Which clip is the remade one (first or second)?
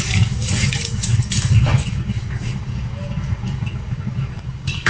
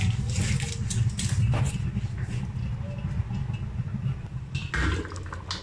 first